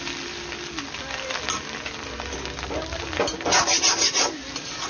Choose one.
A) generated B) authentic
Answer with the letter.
B